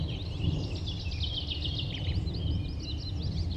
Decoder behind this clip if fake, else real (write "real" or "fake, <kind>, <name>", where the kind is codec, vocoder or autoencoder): real